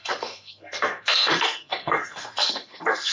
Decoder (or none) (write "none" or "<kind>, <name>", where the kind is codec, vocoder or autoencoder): codec, SNAC